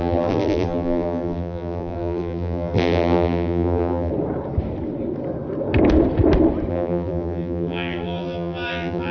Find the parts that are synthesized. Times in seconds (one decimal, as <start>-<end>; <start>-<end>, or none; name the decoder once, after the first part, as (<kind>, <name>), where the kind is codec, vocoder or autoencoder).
0.0-4.1 (vocoder, BigVGAN v2); 6.7-9.1